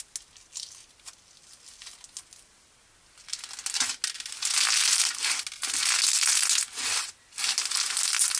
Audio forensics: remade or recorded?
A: recorded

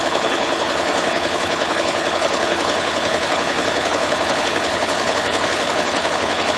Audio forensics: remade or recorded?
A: remade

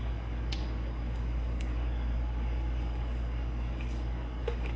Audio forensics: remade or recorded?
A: remade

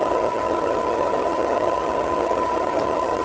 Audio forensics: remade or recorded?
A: remade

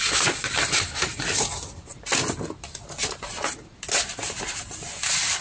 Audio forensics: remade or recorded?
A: recorded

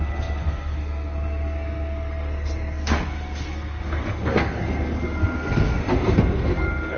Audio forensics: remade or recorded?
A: remade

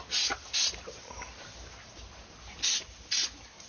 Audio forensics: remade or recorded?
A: recorded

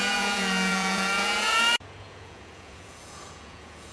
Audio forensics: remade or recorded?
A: remade